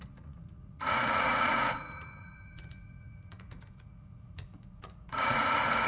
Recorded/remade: remade